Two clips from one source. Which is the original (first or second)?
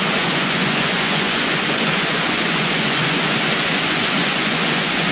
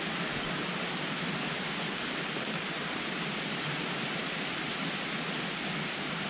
second